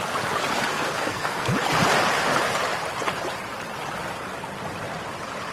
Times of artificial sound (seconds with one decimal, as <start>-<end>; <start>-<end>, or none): 0.7-1.5